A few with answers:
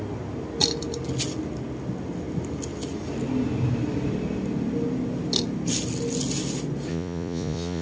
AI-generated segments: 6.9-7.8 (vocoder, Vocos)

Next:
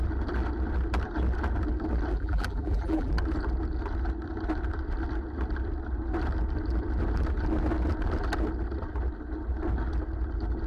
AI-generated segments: 2.1-3.1 (vocoder, BigVGAN v2)

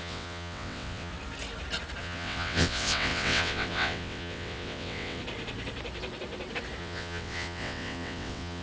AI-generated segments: 0.0-1.1 (vocoder, WaveNeXt); 2.0-5.2; 6.8-8.6